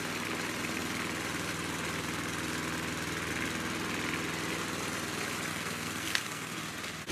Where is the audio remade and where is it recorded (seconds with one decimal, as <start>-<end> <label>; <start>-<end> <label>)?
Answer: 0.0-5.5 recorded; 5.5-6.6 remade; 6.6-7.1 recorded